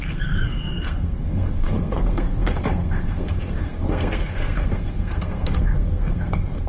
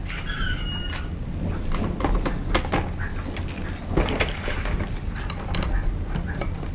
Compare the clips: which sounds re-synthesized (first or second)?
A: first